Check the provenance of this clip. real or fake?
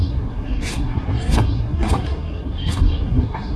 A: fake